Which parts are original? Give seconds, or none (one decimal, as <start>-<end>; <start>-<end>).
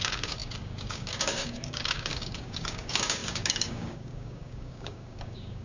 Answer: none